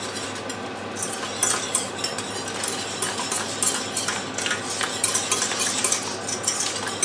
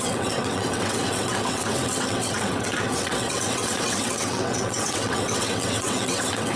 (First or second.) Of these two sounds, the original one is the first